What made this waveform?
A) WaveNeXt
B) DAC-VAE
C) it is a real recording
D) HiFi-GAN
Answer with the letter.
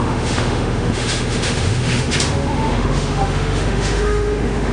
B